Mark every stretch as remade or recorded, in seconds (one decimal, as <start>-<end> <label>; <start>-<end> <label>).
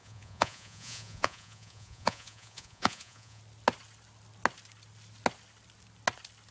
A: 0.0-3.4 remade; 3.4-6.5 recorded